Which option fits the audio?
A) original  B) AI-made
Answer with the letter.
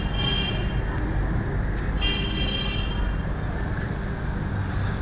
A